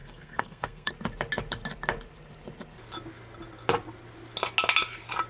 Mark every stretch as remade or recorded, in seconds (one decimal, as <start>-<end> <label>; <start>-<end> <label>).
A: 0.0-0.9 remade; 0.9-5.3 recorded

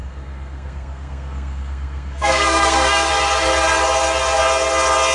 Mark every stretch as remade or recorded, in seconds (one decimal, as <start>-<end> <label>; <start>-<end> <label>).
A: 0.0-3.1 remade; 3.1-5.1 recorded

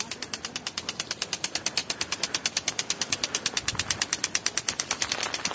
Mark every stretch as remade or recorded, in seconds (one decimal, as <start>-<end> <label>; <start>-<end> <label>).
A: 0.0-5.5 recorded

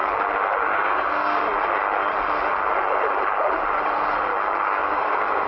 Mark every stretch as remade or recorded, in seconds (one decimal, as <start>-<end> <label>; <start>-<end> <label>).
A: 0.0-0.6 recorded; 0.6-1.5 remade; 1.5-4.8 recorded; 4.8-5.5 remade